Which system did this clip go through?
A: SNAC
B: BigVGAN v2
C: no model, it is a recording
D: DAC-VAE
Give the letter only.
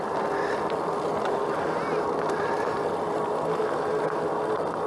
C